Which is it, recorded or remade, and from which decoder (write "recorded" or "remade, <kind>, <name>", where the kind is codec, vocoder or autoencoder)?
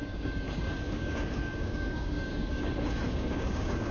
remade, codec, DAC